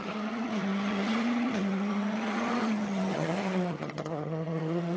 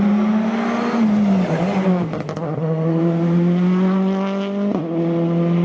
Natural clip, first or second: second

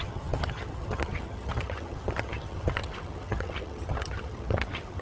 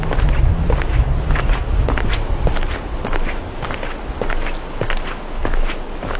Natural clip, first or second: second